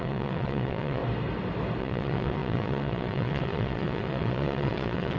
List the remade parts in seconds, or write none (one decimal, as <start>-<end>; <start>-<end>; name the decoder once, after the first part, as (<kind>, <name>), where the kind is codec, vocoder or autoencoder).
0.0-1.0 (vocoder, WaveNeXt); 1.8-5.2